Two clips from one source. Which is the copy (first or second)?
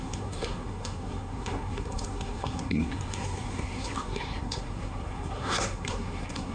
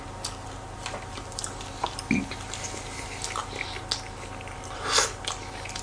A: first